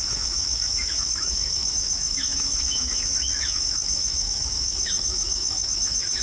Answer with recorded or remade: remade